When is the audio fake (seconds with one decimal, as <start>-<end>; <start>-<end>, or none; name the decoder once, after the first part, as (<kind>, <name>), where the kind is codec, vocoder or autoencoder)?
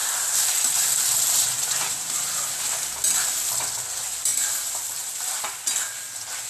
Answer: 0.0-2.5 (vocoder, BigVGAN v2); 4.3-5.6